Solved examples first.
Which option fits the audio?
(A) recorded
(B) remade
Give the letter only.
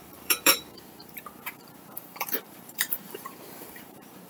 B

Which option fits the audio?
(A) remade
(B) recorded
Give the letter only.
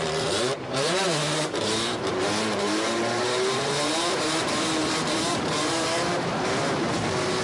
A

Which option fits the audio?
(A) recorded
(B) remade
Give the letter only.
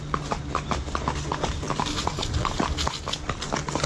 A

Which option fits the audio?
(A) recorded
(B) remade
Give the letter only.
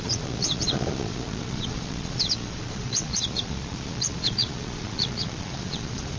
B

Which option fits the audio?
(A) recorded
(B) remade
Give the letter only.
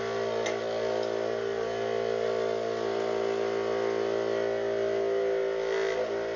A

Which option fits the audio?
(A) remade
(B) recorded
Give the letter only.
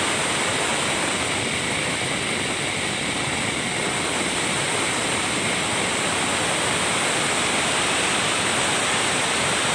B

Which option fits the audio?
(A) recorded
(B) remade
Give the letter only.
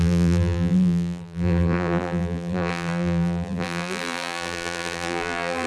B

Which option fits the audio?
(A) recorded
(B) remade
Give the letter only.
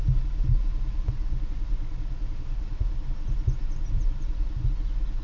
A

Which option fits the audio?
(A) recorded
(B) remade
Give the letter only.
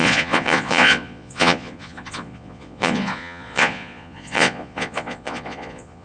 B